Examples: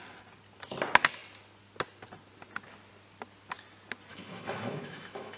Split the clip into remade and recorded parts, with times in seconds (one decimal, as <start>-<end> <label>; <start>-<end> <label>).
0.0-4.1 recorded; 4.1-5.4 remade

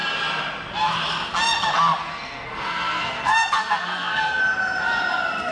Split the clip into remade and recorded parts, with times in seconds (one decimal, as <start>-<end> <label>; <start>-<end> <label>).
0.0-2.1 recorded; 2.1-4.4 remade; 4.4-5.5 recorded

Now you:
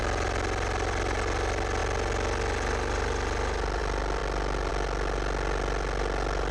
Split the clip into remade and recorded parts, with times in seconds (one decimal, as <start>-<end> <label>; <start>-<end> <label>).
0.0-6.5 recorded